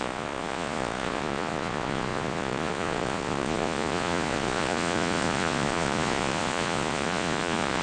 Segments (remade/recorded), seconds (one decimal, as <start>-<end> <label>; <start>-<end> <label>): 0.0-7.8 remade